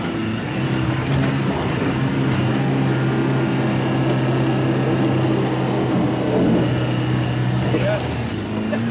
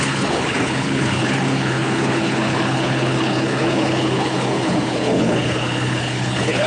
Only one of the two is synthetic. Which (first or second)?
second